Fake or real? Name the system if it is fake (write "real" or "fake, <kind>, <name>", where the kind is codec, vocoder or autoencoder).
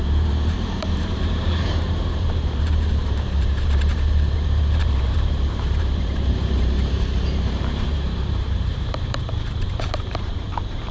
fake, vocoder, BigVGAN v2